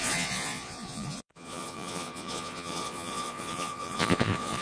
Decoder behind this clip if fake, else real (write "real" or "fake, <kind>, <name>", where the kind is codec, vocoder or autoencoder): fake, vocoder, Vocos